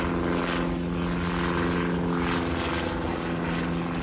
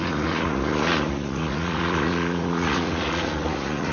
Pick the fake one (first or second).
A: second